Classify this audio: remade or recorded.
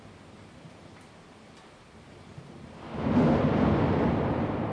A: recorded